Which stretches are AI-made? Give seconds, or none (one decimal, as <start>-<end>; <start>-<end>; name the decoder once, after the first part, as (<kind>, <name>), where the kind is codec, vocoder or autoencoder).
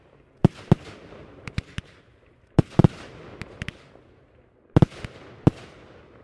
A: none